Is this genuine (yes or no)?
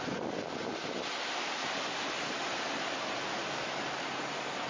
no